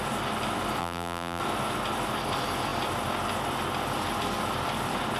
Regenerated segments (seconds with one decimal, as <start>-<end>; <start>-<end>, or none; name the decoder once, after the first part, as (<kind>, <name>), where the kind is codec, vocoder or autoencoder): 0.8-1.4 (vocoder, BigVGAN v2)